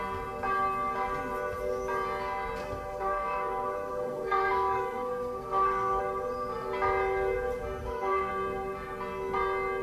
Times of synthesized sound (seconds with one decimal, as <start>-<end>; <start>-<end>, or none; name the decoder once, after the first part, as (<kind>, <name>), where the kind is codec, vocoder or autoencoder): 2.6-6.0 (codec, SNAC); 7.8-8.3